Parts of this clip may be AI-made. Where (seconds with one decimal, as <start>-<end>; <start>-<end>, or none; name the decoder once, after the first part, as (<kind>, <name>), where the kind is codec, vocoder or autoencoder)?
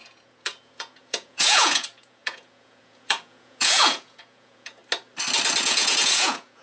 0.0-4.8 (vocoder, Vocos); 5.6-6.6